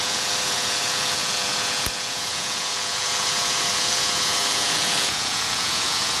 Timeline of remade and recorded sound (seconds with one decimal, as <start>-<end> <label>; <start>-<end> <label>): 0.0-6.2 remade